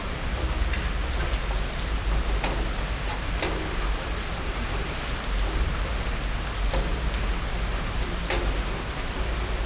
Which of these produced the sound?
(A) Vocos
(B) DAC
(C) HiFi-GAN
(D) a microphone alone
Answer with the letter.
D